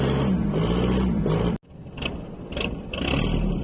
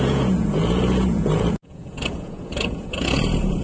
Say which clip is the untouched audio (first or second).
first